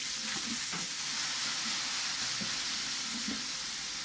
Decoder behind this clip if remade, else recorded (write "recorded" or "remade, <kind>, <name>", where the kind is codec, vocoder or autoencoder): recorded